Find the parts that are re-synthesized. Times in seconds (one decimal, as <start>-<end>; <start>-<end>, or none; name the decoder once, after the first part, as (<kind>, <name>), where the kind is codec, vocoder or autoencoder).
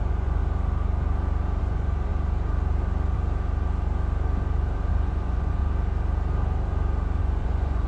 0.0-0.4 (vocoder, Vocos); 1.6-2.1; 4.9-5.6; 7.2-7.9